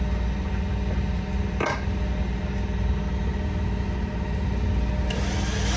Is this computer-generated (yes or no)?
no